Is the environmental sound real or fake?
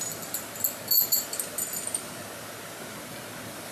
real